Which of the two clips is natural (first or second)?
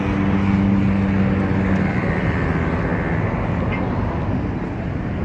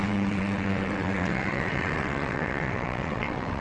first